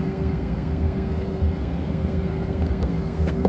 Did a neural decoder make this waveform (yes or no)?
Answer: yes